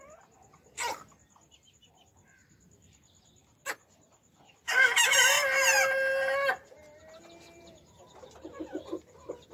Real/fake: real